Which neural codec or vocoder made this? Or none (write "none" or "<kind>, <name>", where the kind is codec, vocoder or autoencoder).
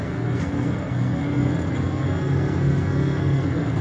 codec, SNAC